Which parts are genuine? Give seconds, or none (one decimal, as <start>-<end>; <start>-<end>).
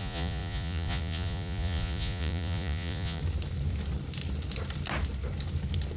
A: 3.2-6.0